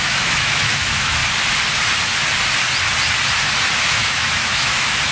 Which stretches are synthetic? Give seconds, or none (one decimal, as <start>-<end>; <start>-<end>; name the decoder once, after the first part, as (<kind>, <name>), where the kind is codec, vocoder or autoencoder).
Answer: 0.0-1.2 (autoencoder, DAC-VAE); 3.8-5.1